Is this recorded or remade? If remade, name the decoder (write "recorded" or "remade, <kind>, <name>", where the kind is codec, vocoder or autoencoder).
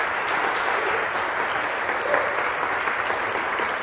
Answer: recorded